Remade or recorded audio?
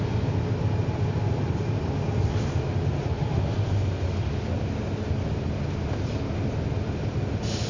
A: recorded